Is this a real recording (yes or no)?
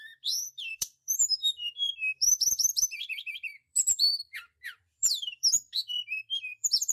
no